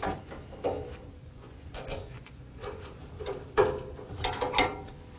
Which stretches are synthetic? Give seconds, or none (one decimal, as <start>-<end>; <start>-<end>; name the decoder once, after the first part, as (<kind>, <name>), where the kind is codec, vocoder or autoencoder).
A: 1.2-3.1 (vocoder, Vocos)